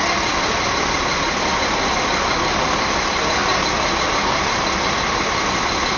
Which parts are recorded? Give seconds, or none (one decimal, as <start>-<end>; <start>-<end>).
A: 0.0-6.0